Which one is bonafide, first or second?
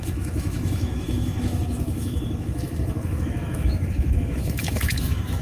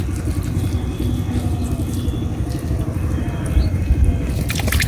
second